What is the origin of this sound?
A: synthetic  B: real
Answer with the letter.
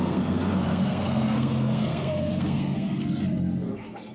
A